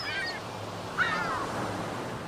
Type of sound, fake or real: real